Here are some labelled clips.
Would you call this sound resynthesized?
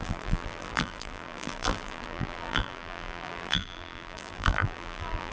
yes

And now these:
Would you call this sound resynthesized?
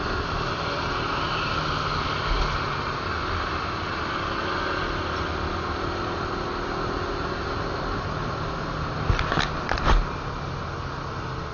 no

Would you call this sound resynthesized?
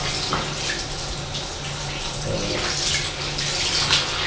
no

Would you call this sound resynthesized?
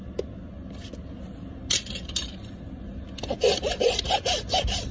no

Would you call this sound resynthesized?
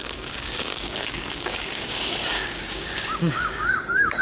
yes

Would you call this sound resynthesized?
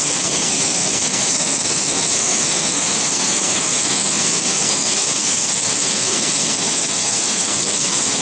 yes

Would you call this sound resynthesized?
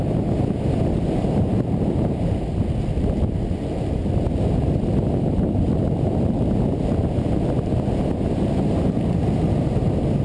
no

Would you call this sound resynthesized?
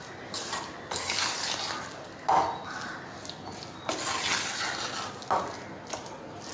no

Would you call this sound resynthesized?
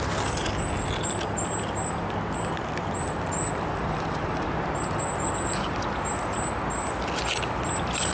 no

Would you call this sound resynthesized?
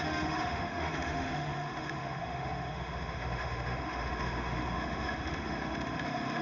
yes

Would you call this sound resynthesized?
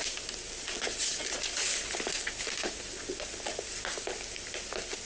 no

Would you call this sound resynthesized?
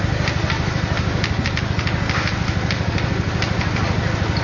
no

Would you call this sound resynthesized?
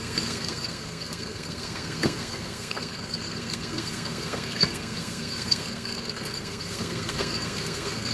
yes